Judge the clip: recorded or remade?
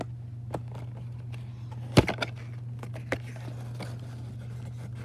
recorded